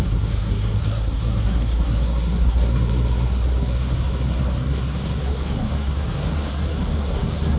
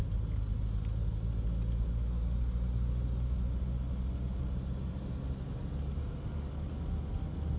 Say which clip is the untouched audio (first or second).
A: second